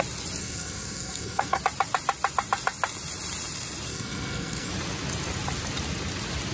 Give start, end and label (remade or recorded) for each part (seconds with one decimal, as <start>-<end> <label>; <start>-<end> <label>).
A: 0.0-0.4 recorded; 0.4-1.6 remade; 1.6-3.9 recorded; 3.9-4.7 remade; 4.7-6.5 recorded